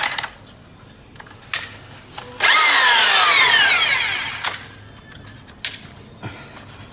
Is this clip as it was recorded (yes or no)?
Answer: yes